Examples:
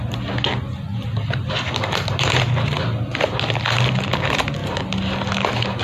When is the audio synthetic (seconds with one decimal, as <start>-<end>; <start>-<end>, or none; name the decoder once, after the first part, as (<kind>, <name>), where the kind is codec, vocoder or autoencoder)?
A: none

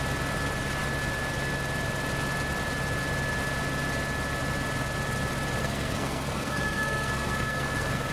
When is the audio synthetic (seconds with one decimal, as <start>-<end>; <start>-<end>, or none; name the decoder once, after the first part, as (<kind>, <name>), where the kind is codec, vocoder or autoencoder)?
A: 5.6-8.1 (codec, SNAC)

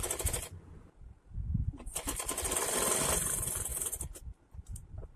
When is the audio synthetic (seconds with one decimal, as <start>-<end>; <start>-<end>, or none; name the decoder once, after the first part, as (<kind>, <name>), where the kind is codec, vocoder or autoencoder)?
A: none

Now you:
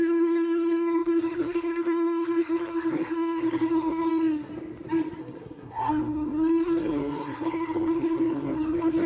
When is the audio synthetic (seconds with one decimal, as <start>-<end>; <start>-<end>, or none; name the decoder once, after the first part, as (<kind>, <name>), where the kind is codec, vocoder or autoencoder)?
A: 0.0-4.5 (codec, SNAC); 5.2-9.1

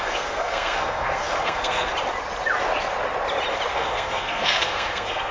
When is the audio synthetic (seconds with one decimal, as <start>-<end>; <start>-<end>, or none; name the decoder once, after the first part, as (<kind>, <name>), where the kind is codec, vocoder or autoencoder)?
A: 0.0-1.9 (codec, SNAC); 3.7-5.3

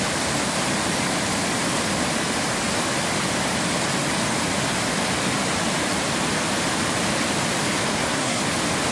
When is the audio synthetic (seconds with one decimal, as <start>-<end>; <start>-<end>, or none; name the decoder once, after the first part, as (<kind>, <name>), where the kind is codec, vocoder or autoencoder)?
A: 7.9-8.4 (codec, SNAC)

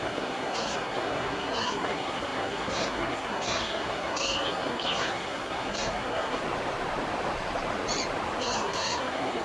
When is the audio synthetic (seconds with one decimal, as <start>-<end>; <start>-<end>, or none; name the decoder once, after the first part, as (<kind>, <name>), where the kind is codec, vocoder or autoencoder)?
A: 0.0-6.4 (codec, SNAC); 8.4-9.4

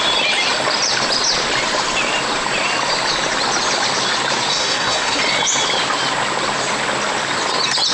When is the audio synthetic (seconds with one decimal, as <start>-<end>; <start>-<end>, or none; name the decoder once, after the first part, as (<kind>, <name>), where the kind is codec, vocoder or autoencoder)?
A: 4.5-5.2 (codec, SNAC)